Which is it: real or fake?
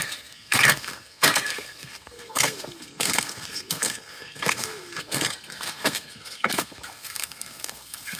fake